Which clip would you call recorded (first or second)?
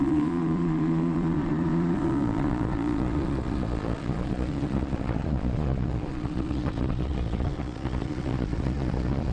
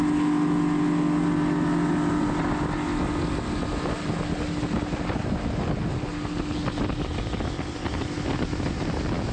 second